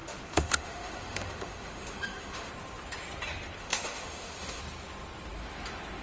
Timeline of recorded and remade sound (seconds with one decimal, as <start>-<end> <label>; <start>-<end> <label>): 0.0-2.5 remade; 2.5-3.6 recorded; 3.6-4.6 remade; 4.6-6.0 recorded